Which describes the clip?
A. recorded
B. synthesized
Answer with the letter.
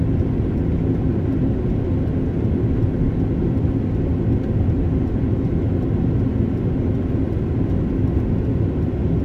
A